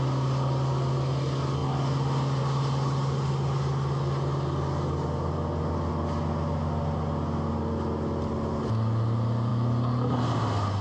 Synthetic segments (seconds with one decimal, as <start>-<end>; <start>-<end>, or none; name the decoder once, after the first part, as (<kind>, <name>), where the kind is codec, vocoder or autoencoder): none